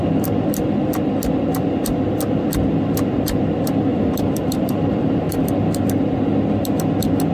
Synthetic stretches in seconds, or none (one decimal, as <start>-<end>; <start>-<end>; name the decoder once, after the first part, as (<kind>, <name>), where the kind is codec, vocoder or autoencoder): 3.9-5.5 (vocoder, BigVGAN v2)